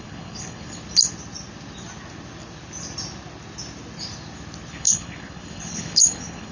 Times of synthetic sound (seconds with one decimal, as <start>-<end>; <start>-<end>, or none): 0.0-0.8; 4.7-6.5